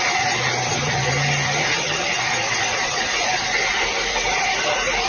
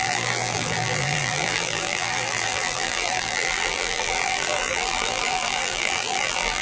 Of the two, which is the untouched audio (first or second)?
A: first